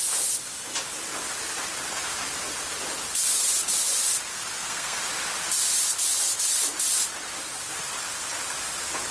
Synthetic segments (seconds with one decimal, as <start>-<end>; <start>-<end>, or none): 4.3-5.0